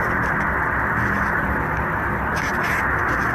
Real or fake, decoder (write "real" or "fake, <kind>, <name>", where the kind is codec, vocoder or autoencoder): real